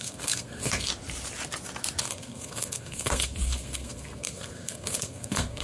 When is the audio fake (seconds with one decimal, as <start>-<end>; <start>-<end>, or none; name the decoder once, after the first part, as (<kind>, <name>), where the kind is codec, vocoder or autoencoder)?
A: 0.0-0.9 (codec, SNAC); 2.0-5.6